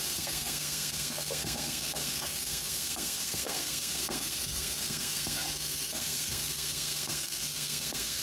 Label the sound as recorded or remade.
remade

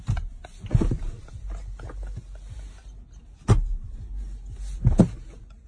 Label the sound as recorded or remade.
recorded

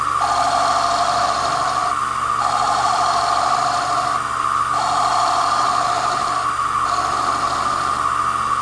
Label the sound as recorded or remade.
recorded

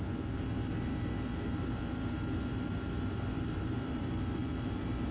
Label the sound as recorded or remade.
recorded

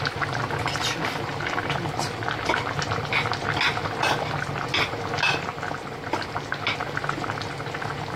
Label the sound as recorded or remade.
recorded